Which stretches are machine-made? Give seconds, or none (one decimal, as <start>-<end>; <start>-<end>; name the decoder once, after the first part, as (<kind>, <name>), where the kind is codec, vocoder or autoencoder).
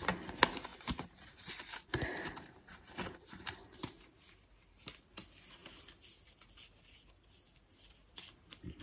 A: 0.7-1.5 (vocoder, BigVGAN v2); 1.9-4.3